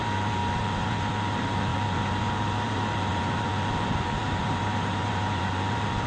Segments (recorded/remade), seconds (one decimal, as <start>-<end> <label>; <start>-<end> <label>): 0.0-0.4 recorded; 0.4-1.1 remade; 1.1-4.2 recorded; 4.2-5.4 remade; 5.4-6.1 recorded

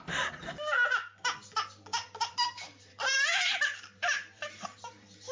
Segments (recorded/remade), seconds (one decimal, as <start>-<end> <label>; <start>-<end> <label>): 0.0-1.9 recorded; 1.9-5.3 remade

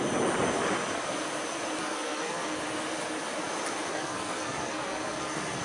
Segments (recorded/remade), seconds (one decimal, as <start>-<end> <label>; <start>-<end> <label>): 0.0-1.8 recorded; 1.8-2.6 remade; 2.6-3.9 recorded; 3.9-5.6 remade

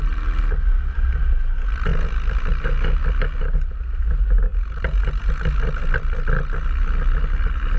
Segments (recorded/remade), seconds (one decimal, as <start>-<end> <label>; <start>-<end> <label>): 0.0-4.5 recorded; 4.5-5.0 remade; 5.0-7.8 recorded

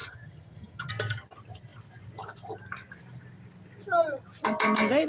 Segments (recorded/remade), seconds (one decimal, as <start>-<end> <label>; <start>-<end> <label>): 0.0-0.9 remade; 0.9-5.1 recorded